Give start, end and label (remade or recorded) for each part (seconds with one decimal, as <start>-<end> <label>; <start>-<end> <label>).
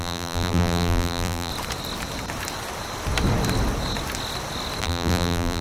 0.0-1.5 remade; 1.5-4.8 recorded; 4.8-5.6 remade